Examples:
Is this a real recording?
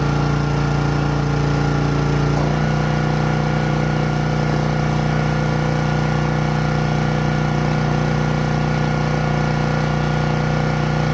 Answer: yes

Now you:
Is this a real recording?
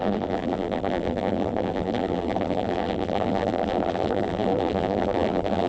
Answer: no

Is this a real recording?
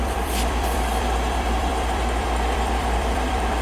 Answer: no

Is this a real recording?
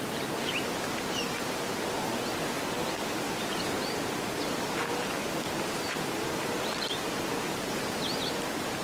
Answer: yes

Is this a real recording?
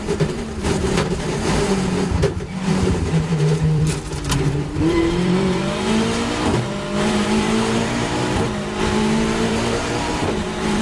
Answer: no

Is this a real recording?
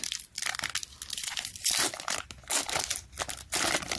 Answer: yes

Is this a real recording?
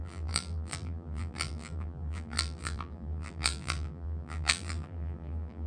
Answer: no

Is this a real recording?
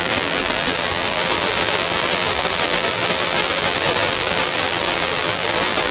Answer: no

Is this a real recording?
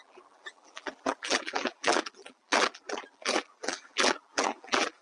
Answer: no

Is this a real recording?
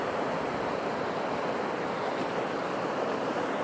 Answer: yes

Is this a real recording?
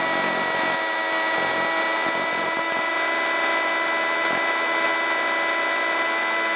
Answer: no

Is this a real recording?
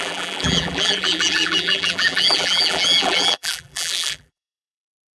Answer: no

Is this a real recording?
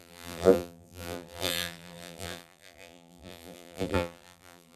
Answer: no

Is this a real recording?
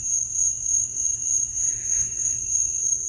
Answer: no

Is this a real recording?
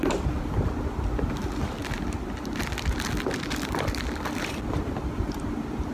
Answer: yes